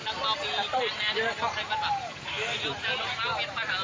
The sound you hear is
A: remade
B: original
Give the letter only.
B